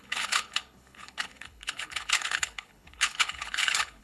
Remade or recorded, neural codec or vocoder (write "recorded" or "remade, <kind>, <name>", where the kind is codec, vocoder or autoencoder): remade, codec, HILCodec